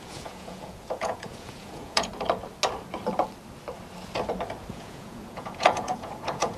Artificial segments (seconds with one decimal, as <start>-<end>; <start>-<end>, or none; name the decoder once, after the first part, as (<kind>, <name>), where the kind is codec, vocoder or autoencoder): 0.0-2.1 (vocoder, Vocos); 4.7-6.6